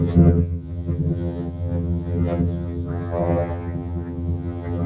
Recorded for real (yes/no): no